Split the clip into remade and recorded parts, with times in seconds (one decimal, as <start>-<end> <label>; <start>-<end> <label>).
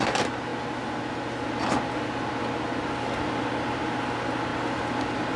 0.0-5.4 recorded